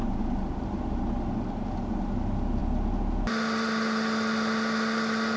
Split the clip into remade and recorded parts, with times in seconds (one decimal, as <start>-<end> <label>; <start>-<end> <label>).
0.0-5.4 recorded